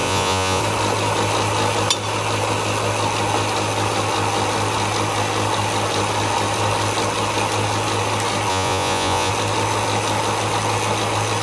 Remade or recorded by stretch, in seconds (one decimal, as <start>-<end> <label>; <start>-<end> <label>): 0.0-0.6 remade; 0.6-8.5 recorded; 8.5-9.3 remade; 9.3-11.4 recorded